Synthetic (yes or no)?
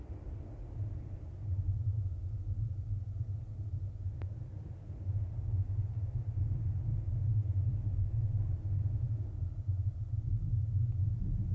no